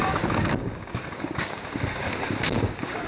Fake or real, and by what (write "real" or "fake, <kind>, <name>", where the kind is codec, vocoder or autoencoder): fake, codec, DAC